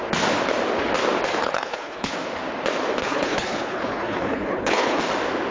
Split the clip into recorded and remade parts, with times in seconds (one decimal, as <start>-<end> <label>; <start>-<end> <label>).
0.0-1.4 recorded; 1.4-2.1 remade; 2.1-3.0 recorded; 3.0-5.0 remade; 5.0-5.5 recorded